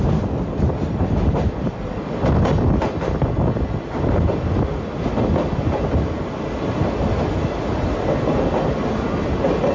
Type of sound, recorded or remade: recorded